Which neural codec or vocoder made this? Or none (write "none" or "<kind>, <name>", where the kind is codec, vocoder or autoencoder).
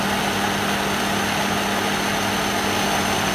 none